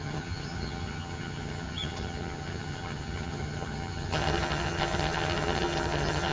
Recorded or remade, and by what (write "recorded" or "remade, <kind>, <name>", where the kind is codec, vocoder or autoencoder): remade, vocoder, HiFi-GAN